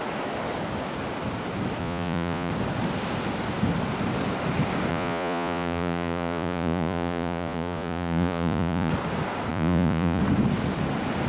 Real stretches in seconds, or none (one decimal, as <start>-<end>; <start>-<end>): 0.0-1.8; 2.5-4.9; 8.9-9.5; 10.2-11.3